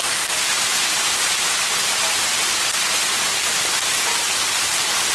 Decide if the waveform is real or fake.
fake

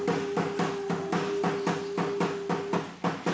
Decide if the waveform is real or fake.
real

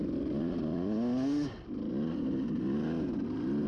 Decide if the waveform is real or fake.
real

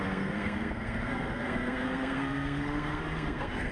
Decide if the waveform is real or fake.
fake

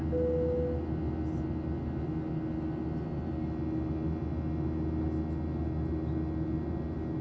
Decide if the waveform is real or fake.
real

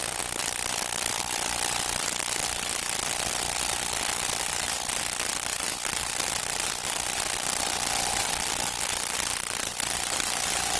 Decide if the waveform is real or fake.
real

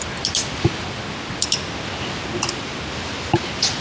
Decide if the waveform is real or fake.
real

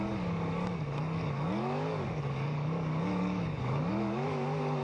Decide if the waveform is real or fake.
fake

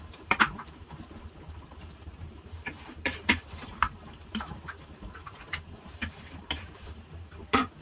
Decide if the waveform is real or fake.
fake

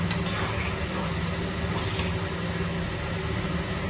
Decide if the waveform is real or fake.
real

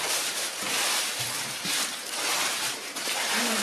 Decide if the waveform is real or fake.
fake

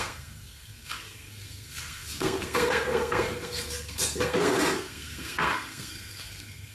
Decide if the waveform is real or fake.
fake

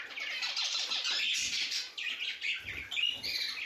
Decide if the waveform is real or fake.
fake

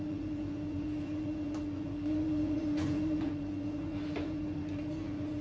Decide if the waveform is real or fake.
fake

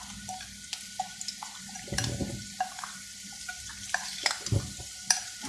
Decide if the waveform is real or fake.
fake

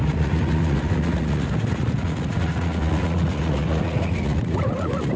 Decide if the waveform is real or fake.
fake